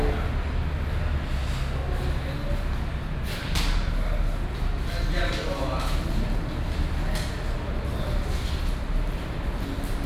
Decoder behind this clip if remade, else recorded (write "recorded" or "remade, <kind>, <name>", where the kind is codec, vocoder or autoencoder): recorded